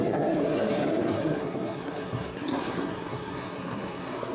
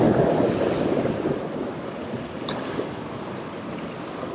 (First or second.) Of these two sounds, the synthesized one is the first